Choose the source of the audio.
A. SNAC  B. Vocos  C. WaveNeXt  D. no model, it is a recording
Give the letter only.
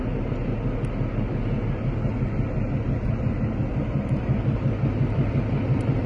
D